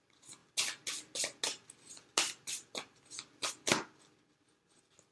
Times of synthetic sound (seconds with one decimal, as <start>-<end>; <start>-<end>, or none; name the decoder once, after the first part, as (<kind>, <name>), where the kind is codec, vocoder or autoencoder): none